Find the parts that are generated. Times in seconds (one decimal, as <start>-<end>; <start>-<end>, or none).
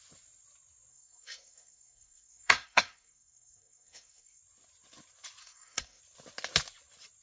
0.9-4.4; 5.4-6.0